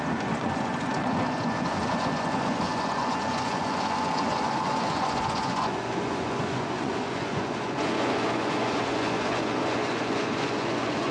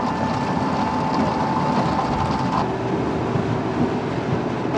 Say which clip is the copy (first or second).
first